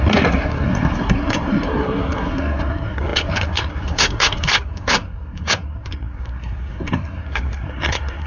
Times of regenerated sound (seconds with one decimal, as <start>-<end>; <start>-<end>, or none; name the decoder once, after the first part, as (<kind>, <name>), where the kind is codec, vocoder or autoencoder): 0.0-8.3 (codec, SNAC)